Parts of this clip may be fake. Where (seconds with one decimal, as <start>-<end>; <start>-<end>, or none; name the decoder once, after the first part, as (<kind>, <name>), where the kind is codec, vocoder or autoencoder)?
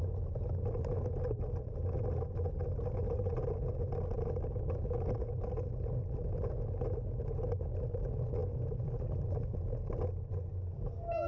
none